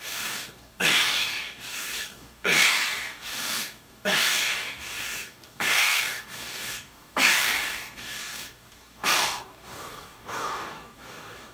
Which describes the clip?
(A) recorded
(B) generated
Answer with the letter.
B